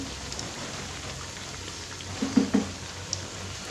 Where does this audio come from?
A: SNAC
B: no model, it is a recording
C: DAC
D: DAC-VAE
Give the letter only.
B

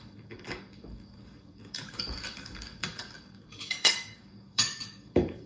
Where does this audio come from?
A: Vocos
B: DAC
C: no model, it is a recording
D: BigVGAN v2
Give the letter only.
B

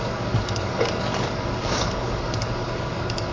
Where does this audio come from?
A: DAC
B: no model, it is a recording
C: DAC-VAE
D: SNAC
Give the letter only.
A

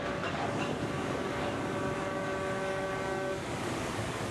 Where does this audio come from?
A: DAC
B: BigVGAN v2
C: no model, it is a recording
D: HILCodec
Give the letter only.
A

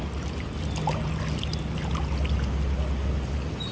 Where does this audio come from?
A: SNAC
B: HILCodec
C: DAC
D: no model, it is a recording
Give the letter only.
D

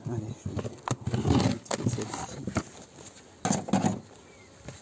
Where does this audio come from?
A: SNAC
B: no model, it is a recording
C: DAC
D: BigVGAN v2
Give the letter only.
B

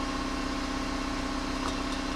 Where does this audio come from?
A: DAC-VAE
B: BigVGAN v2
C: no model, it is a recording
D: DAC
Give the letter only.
C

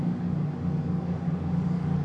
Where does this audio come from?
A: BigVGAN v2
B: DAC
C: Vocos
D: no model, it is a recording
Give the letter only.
B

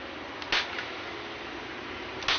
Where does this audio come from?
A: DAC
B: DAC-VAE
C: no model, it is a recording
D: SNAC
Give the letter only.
C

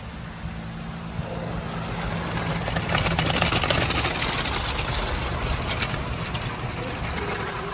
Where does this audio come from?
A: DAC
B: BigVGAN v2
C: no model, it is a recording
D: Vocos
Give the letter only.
C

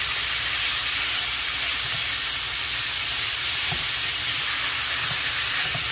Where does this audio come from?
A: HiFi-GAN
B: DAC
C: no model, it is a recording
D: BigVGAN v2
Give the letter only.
C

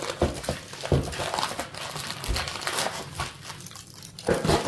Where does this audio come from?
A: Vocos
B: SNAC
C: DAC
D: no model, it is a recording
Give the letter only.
D